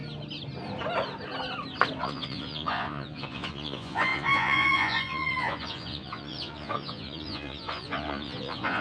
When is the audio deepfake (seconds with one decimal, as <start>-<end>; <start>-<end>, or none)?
2.0-8.8